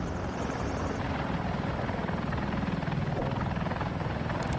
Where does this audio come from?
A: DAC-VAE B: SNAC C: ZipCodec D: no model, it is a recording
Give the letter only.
D